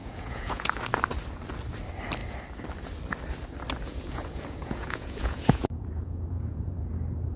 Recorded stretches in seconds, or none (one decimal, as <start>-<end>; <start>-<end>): 0.7-3.9; 6.8-7.4